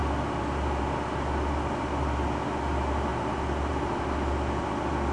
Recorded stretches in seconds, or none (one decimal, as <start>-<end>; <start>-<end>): 0.0-5.1